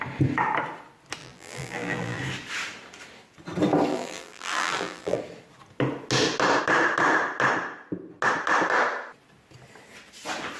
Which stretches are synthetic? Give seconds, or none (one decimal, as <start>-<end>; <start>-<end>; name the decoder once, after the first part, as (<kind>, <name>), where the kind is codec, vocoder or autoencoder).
1.2-2.2 (vocoder, BigVGAN v2); 3.9-5.2